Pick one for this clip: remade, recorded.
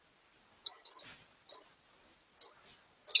recorded